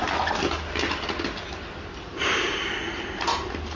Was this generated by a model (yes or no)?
no